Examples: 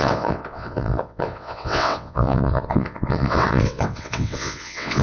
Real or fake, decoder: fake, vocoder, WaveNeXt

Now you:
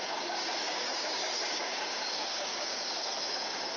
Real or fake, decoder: fake, codec, DAC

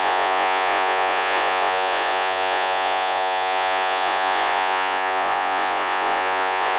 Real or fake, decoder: fake, vocoder, Vocos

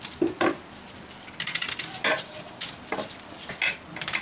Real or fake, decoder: real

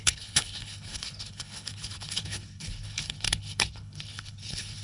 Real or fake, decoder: fake, codec, HILCodec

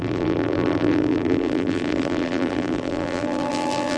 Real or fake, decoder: fake, vocoder, BigVGAN v2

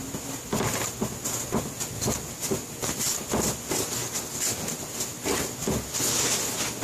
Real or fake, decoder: real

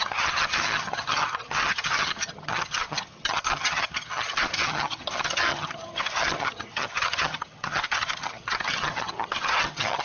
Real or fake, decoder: fake, vocoder, HiFi-GAN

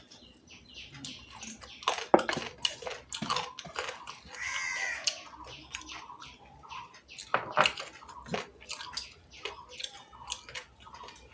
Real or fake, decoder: real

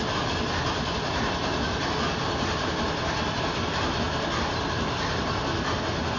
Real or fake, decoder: real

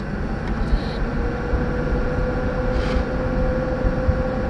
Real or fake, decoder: real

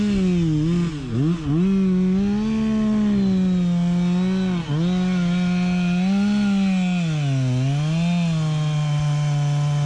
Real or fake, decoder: real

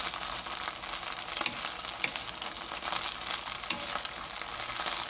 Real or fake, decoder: real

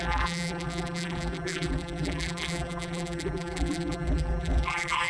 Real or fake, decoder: fake, vocoder, BigVGAN v2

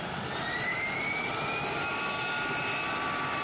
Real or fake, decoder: real